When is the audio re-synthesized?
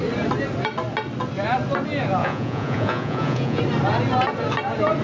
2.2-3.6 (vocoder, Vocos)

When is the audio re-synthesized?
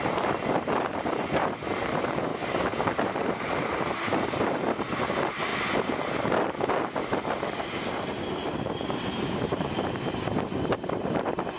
0.0-5.5 (vocoder, BigVGAN v2); 7.5-11.6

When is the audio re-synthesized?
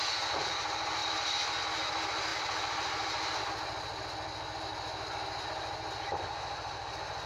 1.0-1.6 (vocoder, BigVGAN v2); 2.3-3.4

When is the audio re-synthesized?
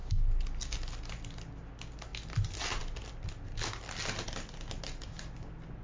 none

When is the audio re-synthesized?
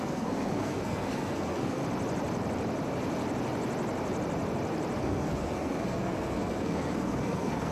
0.0-1.8 (codec, SNAC); 5.0-7.7